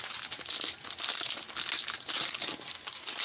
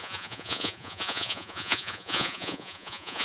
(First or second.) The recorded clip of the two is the first